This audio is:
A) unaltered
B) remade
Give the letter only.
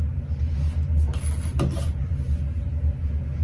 A